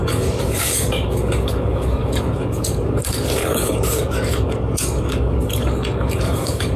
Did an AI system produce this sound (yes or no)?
yes